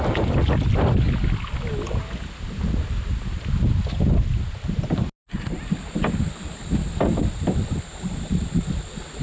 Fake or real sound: real